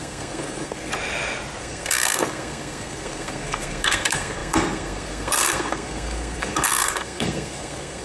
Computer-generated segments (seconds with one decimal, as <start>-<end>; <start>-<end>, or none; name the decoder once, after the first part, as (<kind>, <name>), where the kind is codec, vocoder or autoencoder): 0.0-0.9 (codec, SNAC); 1.6-8.0